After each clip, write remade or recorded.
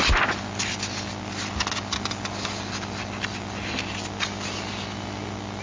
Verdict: recorded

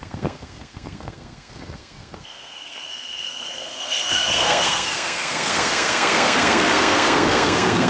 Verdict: remade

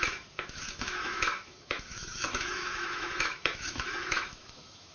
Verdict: remade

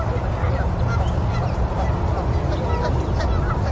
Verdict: recorded